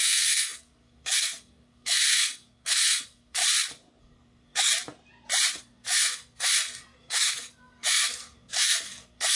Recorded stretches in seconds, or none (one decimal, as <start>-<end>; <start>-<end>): 3.4-4.0; 4.7-5.6